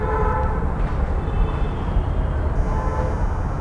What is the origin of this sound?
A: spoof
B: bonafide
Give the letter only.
B